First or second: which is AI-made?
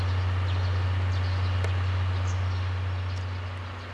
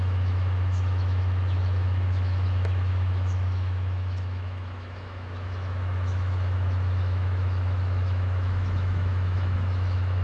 second